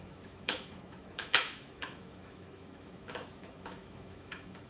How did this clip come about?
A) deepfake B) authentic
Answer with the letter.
A